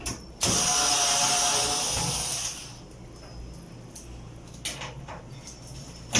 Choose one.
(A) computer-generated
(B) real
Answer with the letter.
B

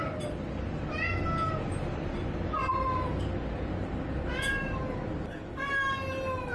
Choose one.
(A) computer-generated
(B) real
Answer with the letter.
B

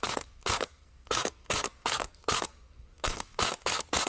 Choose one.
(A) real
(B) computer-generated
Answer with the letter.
B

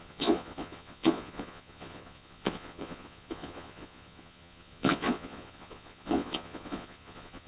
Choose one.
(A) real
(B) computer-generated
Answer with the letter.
B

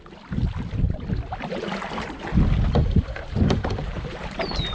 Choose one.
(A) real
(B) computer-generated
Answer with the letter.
B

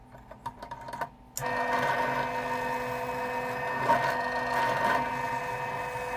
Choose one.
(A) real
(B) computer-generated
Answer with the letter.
A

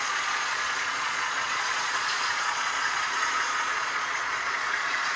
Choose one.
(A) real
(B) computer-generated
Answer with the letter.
B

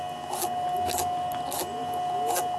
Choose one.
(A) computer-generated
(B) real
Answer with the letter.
B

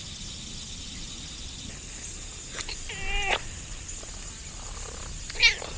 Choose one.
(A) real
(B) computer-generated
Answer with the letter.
A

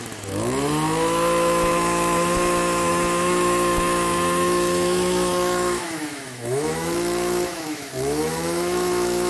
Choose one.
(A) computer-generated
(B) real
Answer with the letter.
A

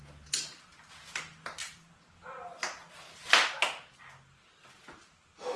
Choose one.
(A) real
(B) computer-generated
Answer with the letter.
A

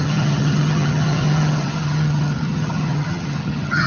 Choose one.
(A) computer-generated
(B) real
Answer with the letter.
A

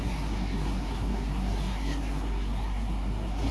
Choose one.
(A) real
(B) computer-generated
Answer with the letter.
B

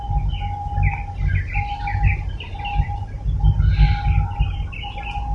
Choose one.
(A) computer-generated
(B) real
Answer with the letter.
B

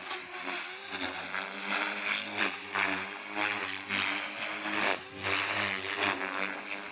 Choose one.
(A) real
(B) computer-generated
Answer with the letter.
A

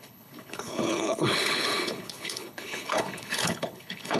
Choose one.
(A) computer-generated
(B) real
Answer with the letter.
A